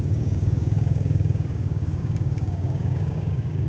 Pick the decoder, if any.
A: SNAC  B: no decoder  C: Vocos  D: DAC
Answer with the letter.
D